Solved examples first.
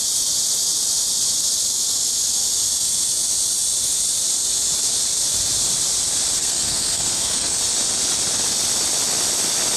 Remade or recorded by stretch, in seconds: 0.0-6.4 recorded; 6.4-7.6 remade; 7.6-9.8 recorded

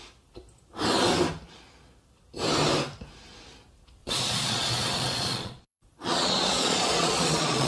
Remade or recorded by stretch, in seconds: 0.0-4.0 recorded; 4.0-7.7 remade

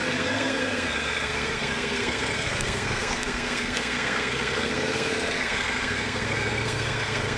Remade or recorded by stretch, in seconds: 0.0-7.4 remade